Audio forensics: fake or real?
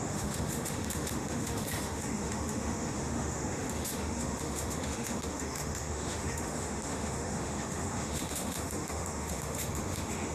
fake